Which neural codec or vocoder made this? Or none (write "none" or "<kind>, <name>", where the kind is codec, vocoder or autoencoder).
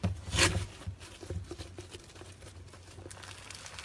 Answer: none